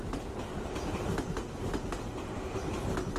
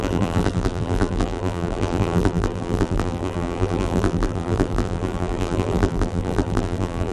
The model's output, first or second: second